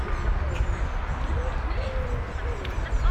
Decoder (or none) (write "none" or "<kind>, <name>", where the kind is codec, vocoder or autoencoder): none